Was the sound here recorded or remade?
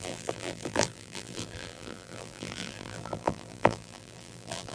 remade